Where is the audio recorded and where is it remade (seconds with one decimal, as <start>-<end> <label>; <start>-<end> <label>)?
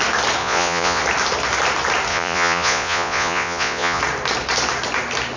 0.0-0.4 recorded; 0.4-1.0 remade; 1.0-2.1 recorded; 2.1-4.0 remade; 4.0-5.4 recorded